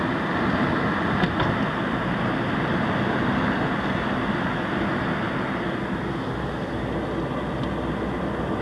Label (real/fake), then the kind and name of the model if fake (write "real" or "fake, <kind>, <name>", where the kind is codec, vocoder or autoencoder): real